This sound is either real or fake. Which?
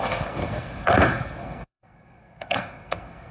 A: fake